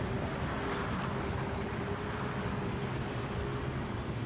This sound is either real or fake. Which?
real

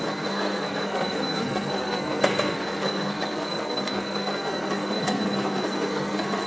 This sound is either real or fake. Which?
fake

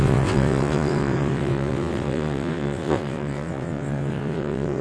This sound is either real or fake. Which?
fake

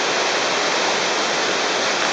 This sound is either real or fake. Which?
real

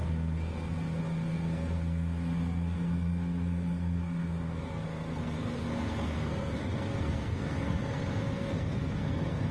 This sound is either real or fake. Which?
fake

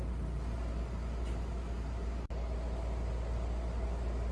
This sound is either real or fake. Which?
real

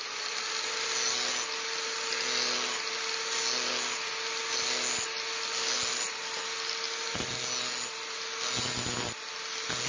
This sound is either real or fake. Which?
real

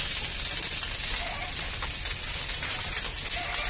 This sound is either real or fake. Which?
real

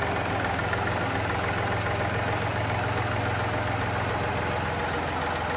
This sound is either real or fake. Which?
real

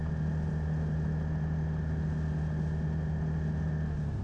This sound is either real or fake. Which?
real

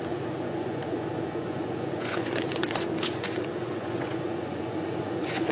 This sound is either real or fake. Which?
fake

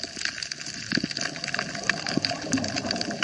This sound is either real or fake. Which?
real